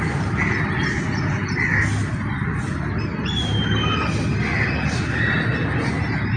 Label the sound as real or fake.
real